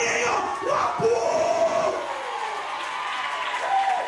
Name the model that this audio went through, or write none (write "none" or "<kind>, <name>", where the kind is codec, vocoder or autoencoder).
vocoder, Vocos